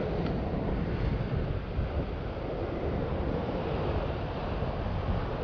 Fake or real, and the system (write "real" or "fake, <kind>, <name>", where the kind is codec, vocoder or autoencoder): real